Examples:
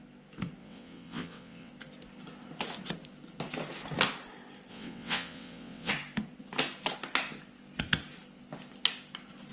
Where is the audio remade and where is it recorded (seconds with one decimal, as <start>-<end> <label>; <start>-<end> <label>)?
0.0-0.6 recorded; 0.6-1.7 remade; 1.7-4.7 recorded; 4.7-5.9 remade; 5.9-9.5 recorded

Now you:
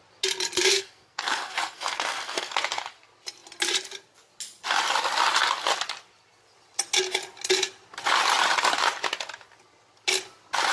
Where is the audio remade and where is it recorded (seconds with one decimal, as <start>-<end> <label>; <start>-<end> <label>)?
0.0-0.7 recorded; 0.7-2.8 remade; 2.8-10.7 recorded

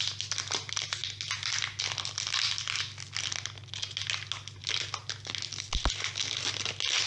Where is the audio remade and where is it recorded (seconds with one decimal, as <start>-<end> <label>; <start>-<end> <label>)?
0.0-7.1 recorded

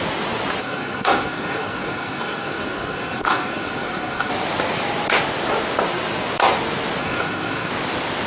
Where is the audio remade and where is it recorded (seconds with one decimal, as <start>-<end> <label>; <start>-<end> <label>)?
0.0-0.6 recorded; 0.6-4.3 remade; 4.3-7.0 recorded; 7.0-7.7 remade; 7.7-8.3 recorded

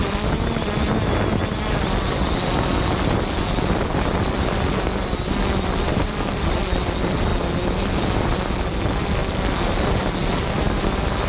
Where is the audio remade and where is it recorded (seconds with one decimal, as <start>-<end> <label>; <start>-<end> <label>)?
0.0-11.3 recorded